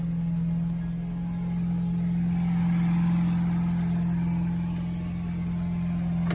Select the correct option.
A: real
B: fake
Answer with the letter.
A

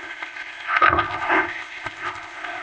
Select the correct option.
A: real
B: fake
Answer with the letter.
B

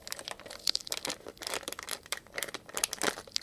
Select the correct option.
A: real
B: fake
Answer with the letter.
B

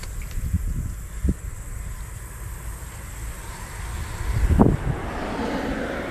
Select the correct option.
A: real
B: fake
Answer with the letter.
A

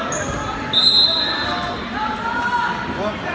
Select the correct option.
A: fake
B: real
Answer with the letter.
B